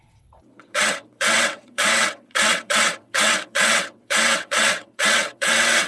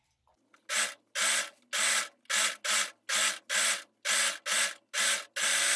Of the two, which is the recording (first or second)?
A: second